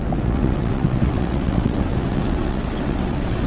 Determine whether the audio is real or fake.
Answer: fake